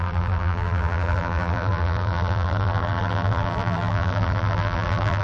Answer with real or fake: fake